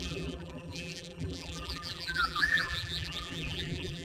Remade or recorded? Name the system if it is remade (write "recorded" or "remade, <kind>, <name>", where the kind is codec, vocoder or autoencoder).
remade, vocoder, BigVGAN v2